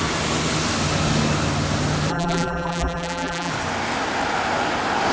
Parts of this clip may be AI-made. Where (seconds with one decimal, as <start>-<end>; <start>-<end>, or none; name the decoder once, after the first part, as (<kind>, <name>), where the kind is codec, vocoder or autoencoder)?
2.1-3.5 (vocoder, BigVGAN v2)